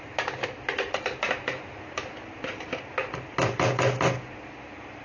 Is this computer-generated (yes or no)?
no